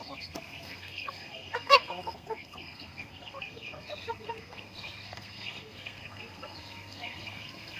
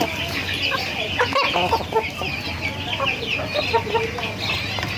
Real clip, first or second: second